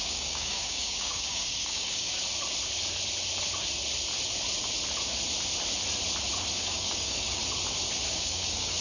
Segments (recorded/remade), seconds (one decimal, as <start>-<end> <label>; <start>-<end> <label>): 0.0-2.1 remade; 2.1-6.6 recorded; 6.6-7.4 remade; 7.4-8.1 recorded; 8.1-8.8 remade